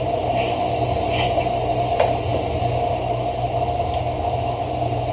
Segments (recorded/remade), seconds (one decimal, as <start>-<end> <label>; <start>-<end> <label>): 0.0-5.1 recorded